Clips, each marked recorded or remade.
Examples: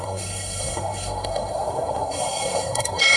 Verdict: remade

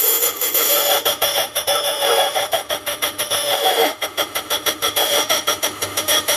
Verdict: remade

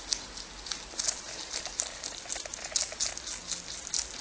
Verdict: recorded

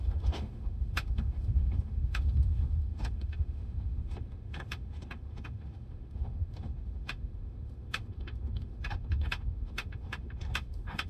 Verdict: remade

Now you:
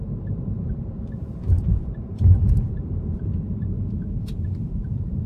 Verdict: remade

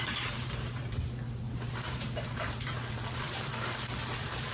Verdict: remade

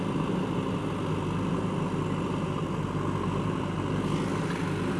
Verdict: recorded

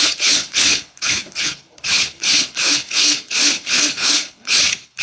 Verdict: remade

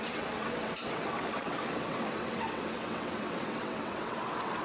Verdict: remade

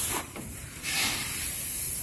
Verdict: remade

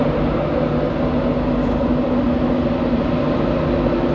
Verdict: recorded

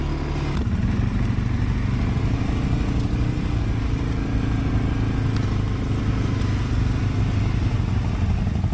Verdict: recorded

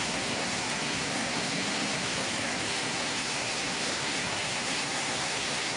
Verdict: remade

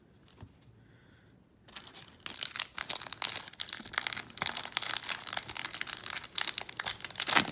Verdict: recorded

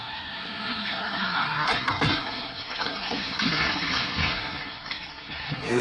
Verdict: remade